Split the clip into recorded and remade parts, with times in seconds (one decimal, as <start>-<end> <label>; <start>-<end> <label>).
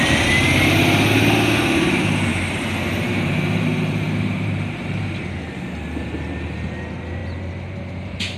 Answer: 0.0-2.3 recorded; 2.3-5.2 remade; 5.2-7.2 recorded; 7.2-7.8 remade; 7.8-8.4 recorded